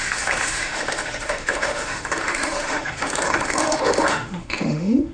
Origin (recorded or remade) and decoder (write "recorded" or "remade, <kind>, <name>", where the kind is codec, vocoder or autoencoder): remade, autoencoder, DAC-VAE